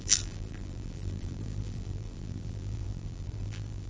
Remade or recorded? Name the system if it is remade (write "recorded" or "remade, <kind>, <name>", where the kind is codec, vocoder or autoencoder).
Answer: remade, vocoder, BigVGAN v2